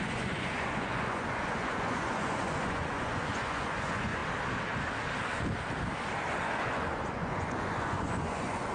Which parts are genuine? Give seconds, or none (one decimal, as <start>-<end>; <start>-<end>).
4.2-6.3